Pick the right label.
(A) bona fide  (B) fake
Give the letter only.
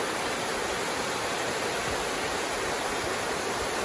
A